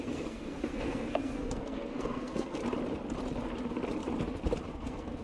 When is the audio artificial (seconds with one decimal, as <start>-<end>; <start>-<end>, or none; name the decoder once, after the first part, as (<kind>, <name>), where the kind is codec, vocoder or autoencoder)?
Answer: 0.0-2.6 (codec, SNAC); 4.7-5.2